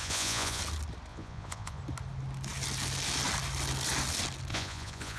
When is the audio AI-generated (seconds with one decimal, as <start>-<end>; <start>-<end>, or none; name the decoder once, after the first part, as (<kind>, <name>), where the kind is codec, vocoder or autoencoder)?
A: 0.0-0.6 (vocoder, Vocos); 1.1-1.8; 4.5-5.2